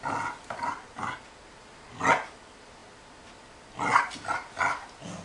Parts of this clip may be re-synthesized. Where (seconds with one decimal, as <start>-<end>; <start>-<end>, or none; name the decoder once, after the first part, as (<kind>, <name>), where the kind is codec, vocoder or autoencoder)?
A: none